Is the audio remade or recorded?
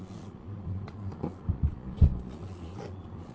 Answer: remade